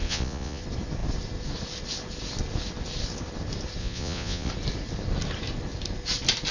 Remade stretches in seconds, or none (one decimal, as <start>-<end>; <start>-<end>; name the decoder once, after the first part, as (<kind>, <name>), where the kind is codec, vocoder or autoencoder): 0.0-0.6 (vocoder, Vocos); 3.8-4.5

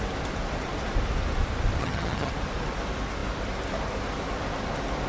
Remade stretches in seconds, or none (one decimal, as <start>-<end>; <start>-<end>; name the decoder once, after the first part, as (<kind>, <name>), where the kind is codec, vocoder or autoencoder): 1.8-2.3 (vocoder, HiFi-GAN)

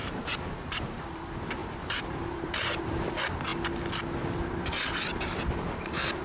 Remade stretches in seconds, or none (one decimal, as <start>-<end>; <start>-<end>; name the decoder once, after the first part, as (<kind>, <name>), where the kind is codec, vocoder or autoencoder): 0.0-1.2 (vocoder, BigVGAN v2); 1.6-3.1

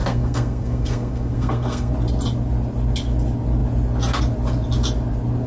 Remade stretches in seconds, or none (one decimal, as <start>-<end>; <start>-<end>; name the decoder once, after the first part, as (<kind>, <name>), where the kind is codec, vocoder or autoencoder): 0.0-1.9 (codec, SNAC)

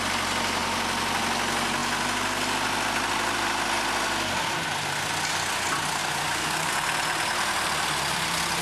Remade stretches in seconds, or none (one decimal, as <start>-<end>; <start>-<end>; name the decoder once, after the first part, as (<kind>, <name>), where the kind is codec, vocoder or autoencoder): 6.0-6.7 (codec, DAC)